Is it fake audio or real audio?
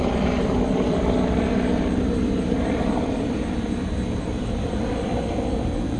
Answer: real